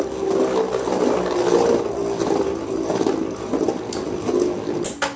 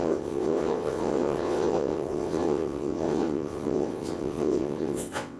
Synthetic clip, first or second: second